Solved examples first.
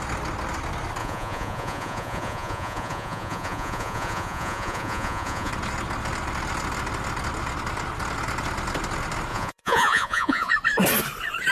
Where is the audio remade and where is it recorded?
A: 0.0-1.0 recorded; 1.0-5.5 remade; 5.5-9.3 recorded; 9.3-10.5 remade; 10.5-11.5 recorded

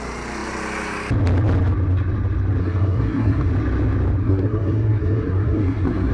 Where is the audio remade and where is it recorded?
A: 0.0-2.6 recorded; 2.6-3.5 remade; 3.5-4.2 recorded; 4.2-6.1 remade

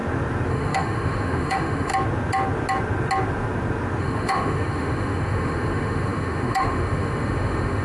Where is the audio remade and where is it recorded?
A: 0.0-0.5 recorded; 0.5-1.9 remade; 1.9-4.0 recorded; 4.0-7.8 remade

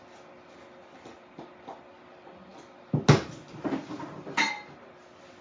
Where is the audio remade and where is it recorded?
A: 0.0-5.4 recorded

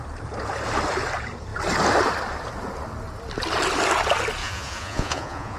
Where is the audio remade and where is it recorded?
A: 0.0-4.4 recorded; 4.4-5.6 remade

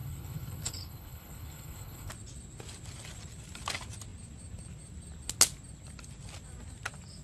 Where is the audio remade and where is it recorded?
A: 0.0-2.1 remade; 2.1-7.2 recorded

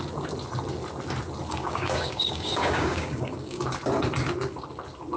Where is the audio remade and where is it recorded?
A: 0.0-1.5 recorded; 1.5-3.6 remade; 3.6-5.2 recorded